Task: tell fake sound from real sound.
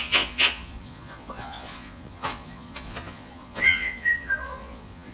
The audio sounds fake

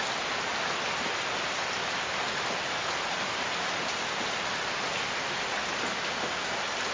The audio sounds real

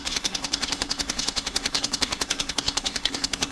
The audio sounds fake